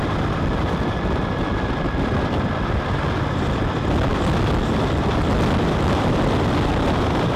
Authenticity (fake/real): real